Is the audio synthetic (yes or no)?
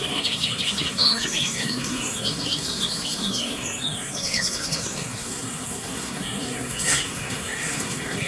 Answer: yes